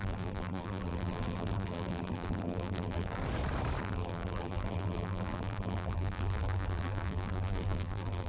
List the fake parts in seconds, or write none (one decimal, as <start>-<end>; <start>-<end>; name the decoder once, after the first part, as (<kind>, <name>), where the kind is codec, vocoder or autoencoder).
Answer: 0.0-3.2 (vocoder, BigVGAN v2); 3.8-8.3